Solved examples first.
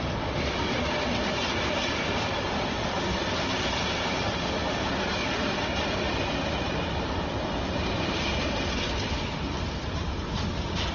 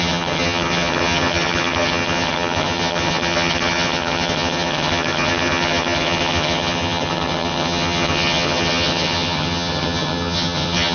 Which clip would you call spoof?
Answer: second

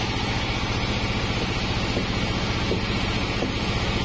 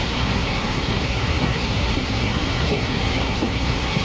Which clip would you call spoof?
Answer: second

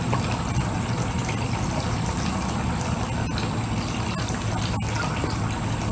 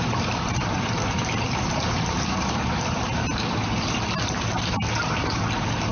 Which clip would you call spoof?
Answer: second